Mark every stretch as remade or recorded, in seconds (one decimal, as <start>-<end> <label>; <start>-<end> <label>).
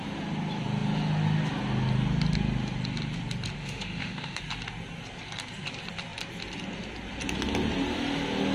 0.0-3.6 recorded; 3.6-4.4 remade; 4.4-8.5 recorded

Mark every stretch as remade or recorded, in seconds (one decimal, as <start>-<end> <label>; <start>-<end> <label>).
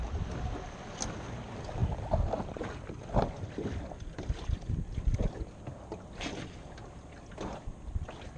0.0-8.4 recorded